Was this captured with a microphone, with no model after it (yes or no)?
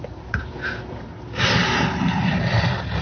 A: yes